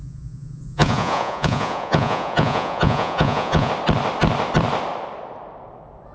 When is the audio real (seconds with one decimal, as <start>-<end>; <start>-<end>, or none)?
3.7-6.1